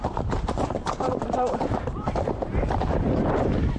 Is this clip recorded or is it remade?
remade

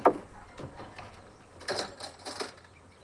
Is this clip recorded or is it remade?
recorded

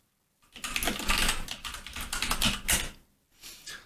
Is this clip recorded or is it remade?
recorded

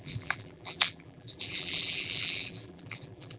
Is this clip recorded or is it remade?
remade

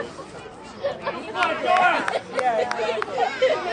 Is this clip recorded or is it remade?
recorded